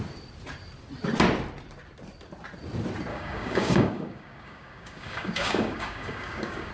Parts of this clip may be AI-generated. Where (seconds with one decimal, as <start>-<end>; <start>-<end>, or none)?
3.1-6.7